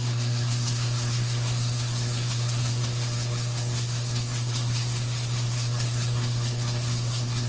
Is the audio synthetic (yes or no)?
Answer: yes